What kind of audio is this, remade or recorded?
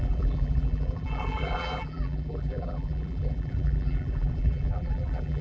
remade